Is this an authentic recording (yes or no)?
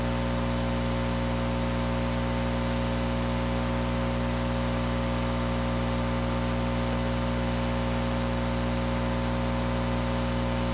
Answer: yes